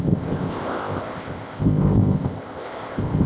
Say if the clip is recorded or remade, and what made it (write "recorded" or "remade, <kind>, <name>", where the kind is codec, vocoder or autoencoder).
remade, codec, ZipCodec